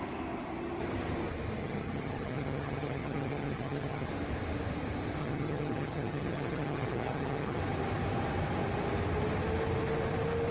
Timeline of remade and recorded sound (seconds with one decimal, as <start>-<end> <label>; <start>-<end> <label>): 0.0-1.6 recorded; 1.6-4.1 remade; 4.1-5.2 recorded; 5.2-7.6 remade; 7.6-10.5 recorded